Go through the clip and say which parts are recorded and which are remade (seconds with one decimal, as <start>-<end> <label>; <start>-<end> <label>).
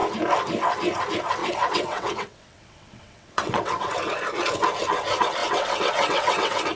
0.0-1.4 recorded; 1.4-3.9 remade; 3.9-5.4 recorded; 5.4-6.8 remade